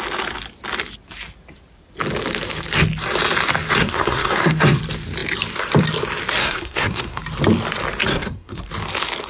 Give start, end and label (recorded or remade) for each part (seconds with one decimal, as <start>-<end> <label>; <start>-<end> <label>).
0.0-3.8 recorded; 3.8-4.8 remade; 4.8-6.4 recorded; 6.4-7.2 remade; 7.2-8.1 recorded; 8.1-8.7 remade; 8.7-9.3 recorded